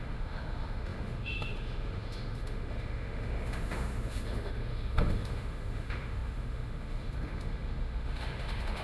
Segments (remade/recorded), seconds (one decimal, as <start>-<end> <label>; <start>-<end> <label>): 0.0-8.8 remade